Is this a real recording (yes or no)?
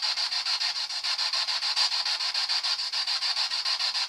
no